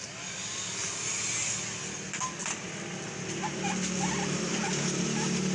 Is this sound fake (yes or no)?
no